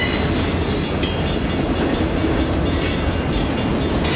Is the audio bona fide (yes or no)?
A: yes